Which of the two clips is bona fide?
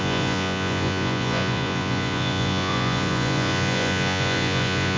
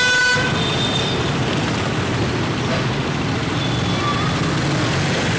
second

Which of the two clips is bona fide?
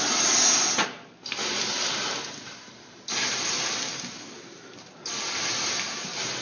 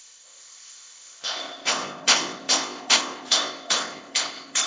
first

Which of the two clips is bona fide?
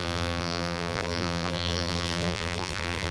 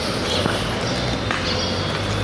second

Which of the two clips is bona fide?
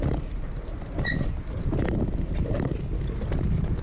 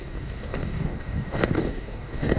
first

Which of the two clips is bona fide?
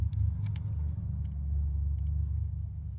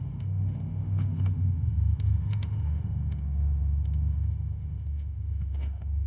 first